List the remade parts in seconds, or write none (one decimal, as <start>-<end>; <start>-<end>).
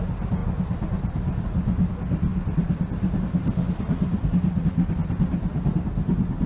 none